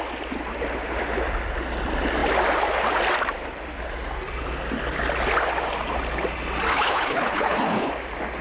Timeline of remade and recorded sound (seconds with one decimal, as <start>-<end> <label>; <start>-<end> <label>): 0.0-6.7 recorded; 6.7-7.9 remade; 7.9-8.4 recorded